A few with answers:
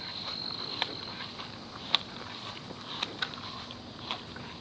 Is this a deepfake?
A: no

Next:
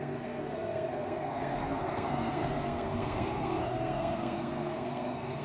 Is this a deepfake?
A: yes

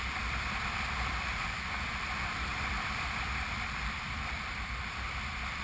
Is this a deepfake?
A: yes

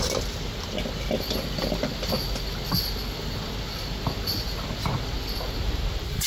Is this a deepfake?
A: no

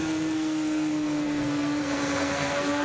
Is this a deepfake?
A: yes